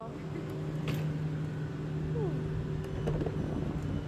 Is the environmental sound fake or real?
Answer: real